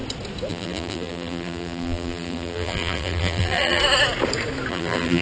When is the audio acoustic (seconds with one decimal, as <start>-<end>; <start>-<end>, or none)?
0.0-0.5; 3.8-4.7